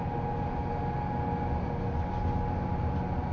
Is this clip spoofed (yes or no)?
no